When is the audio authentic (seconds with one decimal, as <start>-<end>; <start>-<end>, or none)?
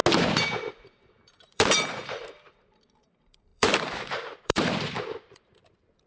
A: 0.0-0.7; 2.0-2.6